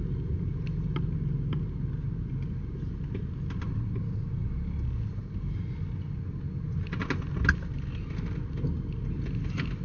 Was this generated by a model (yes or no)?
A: no